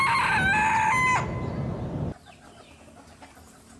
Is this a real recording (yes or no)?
yes